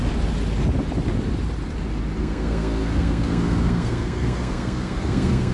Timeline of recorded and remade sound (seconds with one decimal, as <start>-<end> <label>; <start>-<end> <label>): 0.0-2.2 recorded; 2.2-5.5 remade